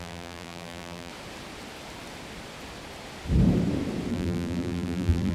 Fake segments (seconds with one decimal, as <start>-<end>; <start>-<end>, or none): 0.0-1.1; 4.1-5.3